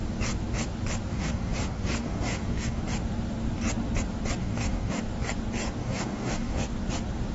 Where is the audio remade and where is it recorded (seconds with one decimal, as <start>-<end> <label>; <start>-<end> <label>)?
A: 0.0-1.1 recorded; 1.1-2.8 remade; 2.8-4.4 recorded; 4.4-5.0 remade; 5.0-5.8 recorded; 5.8-6.6 remade; 6.6-7.3 recorded